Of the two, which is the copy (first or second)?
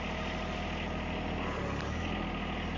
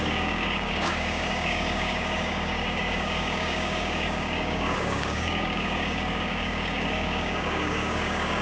second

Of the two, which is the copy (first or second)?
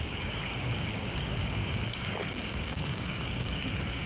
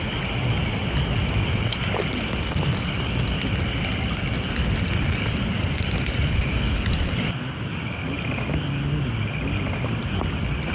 first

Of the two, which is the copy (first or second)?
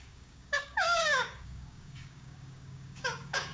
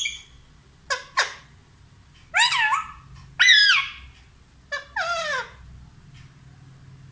first